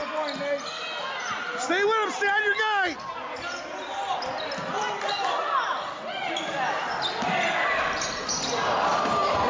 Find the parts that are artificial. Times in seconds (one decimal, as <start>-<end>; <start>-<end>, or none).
none